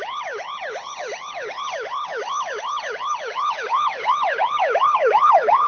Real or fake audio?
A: fake